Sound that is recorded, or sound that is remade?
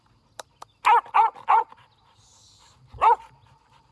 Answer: recorded